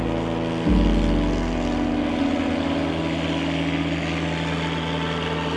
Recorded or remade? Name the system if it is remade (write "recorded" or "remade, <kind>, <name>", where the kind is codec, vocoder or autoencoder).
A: recorded